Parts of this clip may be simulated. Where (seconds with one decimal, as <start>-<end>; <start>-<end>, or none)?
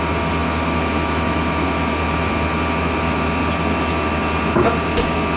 none